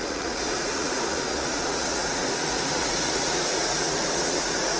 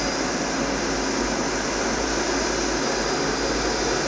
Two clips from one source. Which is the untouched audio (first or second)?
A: second